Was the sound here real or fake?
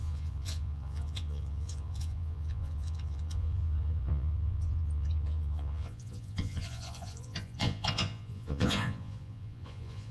fake